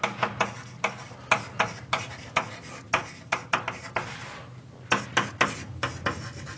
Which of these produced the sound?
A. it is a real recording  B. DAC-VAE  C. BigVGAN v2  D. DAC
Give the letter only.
A